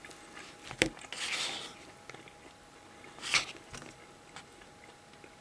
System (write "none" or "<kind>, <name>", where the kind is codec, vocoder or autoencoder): none